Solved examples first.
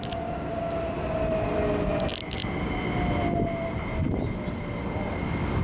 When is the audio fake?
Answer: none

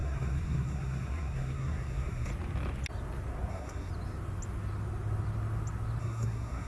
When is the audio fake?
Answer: 0.0-2.3 (codec, SNAC); 3.5-3.9; 6.0-6.7

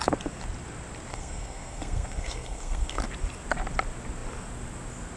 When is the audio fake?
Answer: 1.1-3.0 (codec, SNAC)

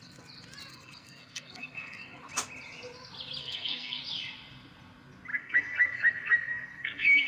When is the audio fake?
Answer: 0.7-2.2 (codec, SNAC); 3.4-4.0; 5.3-7.3

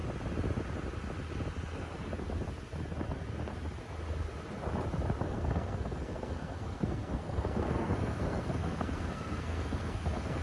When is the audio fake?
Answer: 5.2-10.4 (codec, SNAC)

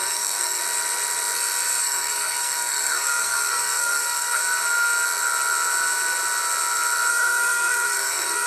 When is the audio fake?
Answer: 0.0-0.6 (codec, SNAC); 1.8-4.4; 7.1-8.5

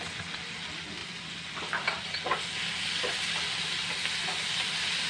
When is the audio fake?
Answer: none